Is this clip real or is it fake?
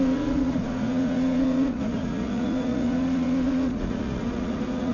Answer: fake